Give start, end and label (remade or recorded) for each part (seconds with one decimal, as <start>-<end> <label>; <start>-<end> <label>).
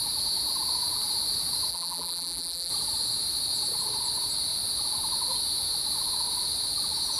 0.0-1.7 recorded; 1.7-2.7 remade; 2.7-7.2 recorded